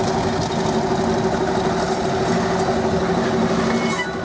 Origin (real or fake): real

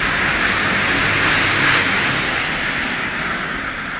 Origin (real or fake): real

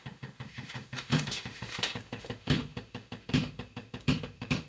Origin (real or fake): fake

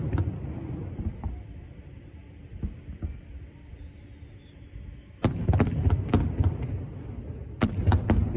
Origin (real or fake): real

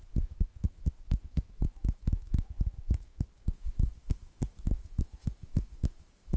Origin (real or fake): fake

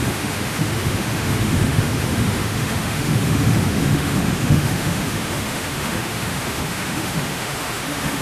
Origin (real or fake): fake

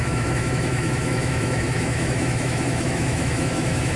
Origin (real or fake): fake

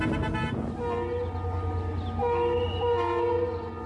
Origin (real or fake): real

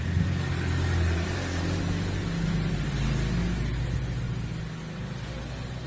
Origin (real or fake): real